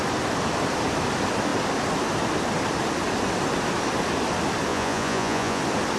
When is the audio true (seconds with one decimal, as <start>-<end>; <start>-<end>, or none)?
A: 0.0-4.7; 5.6-6.0

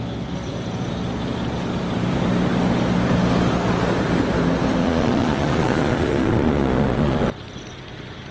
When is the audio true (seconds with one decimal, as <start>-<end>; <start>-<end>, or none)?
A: 0.0-4.8; 7.3-8.3

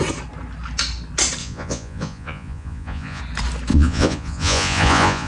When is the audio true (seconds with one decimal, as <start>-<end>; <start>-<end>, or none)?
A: 0.0-1.4; 3.2-3.7

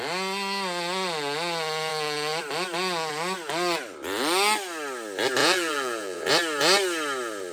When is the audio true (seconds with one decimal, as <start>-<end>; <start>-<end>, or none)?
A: 0.0-5.4; 6.3-7.5

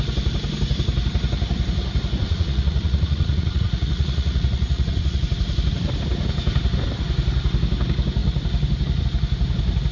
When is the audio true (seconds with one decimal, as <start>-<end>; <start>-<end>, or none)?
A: 0.0-2.2; 5.2-9.9